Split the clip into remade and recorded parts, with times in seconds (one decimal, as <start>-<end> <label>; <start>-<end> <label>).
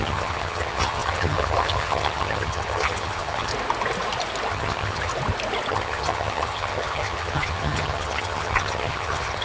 0.0-3.5 remade; 3.5-4.5 recorded; 4.5-5.1 remade; 5.1-5.7 recorded; 5.7-9.4 remade